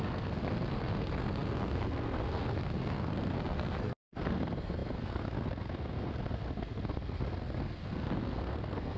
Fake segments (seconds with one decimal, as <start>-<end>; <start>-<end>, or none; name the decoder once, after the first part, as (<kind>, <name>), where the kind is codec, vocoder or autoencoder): 0.0-9.0 (codec, SNAC)

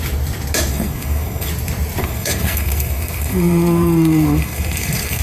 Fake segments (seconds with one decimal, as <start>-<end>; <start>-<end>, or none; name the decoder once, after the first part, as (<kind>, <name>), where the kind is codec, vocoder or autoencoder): 0.7-1.5 (codec, SNAC); 2.0-5.2